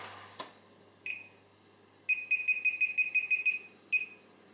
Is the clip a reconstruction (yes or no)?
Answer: no